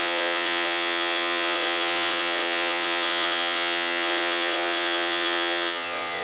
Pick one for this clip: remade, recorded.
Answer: remade